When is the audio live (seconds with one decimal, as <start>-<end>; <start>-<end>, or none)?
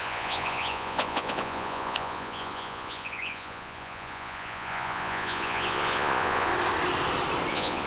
6.5-7.5